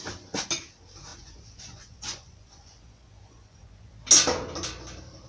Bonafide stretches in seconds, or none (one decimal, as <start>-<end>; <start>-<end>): 0.0-1.1; 3.9-5.3

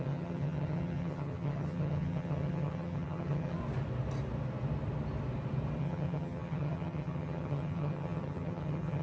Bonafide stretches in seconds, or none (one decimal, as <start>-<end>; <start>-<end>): 3.6-5.8

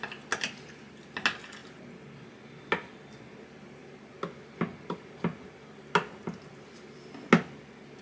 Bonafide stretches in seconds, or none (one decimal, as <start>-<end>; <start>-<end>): 0.0-8.0